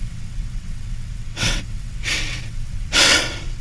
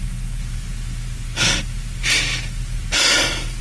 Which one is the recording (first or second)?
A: second